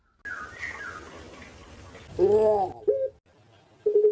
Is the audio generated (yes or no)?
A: no